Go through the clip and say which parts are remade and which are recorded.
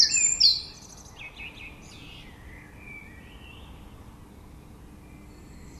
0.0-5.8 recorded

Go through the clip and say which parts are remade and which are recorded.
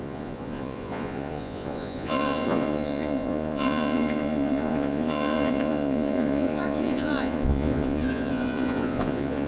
0.0-9.5 remade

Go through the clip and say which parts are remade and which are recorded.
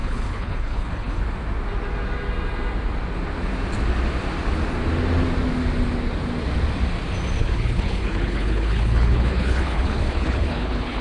0.0-1.2 remade; 1.2-7.4 recorded; 7.4-11.0 remade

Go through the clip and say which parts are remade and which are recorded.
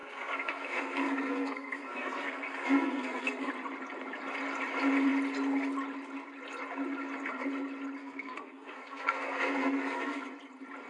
0.0-3.5 remade; 3.5-8.0 recorded; 8.0-10.2 remade; 10.2-10.9 recorded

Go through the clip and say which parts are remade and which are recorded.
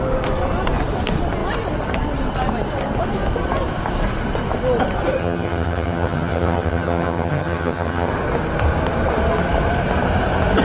0.0-5.2 recorded; 5.2-8.1 remade; 8.1-10.6 recorded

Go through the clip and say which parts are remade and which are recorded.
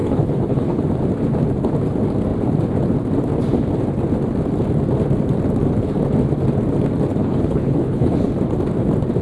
0.0-0.8 remade; 0.8-7.2 recorded; 7.2-8.3 remade; 8.3-9.2 recorded